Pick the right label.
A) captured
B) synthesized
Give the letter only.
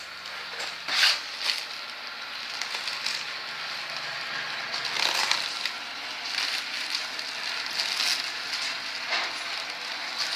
A